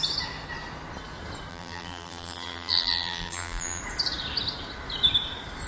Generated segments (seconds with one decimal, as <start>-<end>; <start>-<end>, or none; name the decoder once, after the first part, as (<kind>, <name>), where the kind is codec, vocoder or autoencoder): 1.5-3.8 (vocoder, BigVGAN v2)